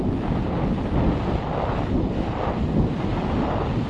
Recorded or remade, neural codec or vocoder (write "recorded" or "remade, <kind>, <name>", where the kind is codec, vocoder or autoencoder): recorded